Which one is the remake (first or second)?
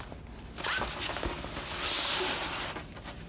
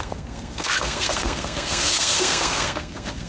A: second